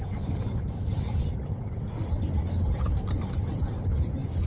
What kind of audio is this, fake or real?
real